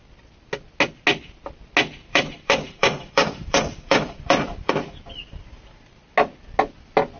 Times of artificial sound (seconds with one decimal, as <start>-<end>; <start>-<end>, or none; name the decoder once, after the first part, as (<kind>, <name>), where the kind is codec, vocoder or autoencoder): 2.1-4.7 (vocoder, BigVGAN v2)